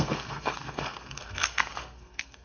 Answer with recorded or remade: remade